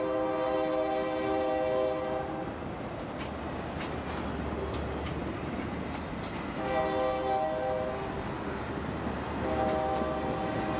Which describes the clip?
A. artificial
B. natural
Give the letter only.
B